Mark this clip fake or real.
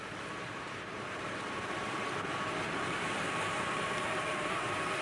fake